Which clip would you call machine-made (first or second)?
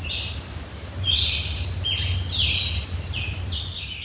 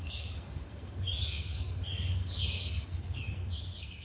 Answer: second